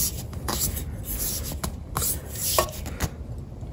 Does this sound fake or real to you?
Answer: real